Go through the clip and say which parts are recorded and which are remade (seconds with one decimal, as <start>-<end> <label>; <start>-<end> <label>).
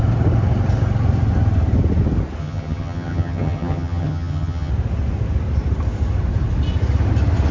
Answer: 0.0-2.4 recorded; 2.4-4.7 remade; 4.7-7.5 recorded